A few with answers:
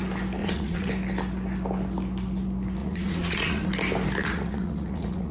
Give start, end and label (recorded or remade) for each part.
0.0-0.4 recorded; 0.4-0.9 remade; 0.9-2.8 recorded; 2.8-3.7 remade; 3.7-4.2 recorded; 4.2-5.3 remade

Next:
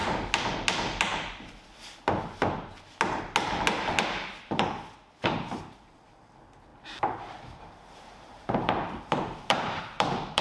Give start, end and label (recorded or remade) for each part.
0.0-5.2 recorded; 5.2-10.4 remade

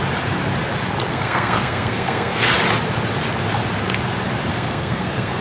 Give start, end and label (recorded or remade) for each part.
0.0-1.1 recorded; 1.1-2.5 remade; 2.5-4.5 recorded; 4.5-5.4 remade

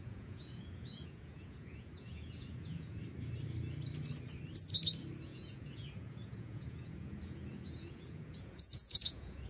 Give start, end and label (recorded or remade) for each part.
0.0-3.0 remade; 3.0-5.2 recorded; 5.2-9.5 remade

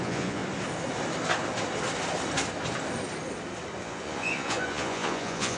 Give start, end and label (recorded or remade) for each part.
0.0-0.4 remade; 0.4-3.8 recorded; 3.8-5.6 remade

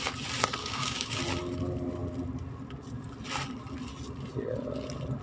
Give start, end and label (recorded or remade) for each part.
0.0-0.6 recorded; 0.6-1.2 remade; 1.2-5.2 recorded

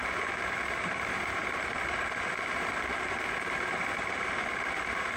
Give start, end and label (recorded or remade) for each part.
0.0-5.2 remade

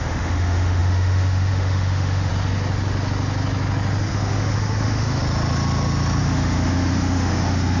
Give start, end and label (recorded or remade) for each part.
0.0-2.3 remade; 2.3-4.1 recorded; 4.1-5.2 remade; 5.2-6.2 recorded; 6.2-7.8 remade